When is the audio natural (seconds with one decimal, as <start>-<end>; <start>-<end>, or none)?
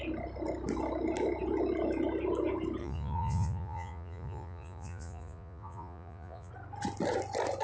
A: 0.0-2.8; 6.5-7.6